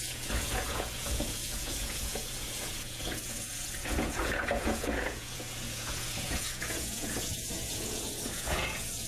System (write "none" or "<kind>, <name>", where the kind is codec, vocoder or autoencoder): vocoder, Vocos